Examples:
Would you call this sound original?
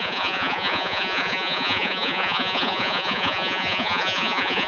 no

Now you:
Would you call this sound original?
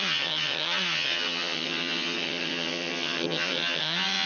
no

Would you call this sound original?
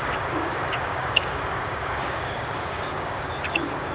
no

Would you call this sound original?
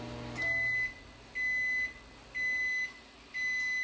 yes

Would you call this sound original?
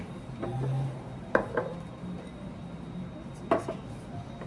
yes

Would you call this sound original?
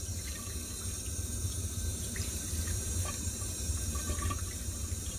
no